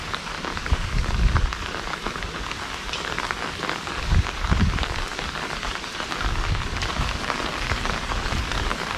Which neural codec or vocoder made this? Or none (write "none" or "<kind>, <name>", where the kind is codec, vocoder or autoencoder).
codec, DAC